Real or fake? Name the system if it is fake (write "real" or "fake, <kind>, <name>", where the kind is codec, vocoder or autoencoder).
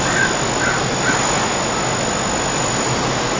real